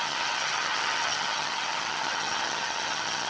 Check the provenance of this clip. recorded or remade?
remade